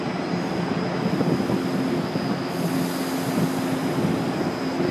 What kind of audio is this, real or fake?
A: real